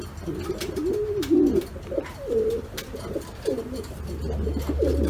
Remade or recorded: recorded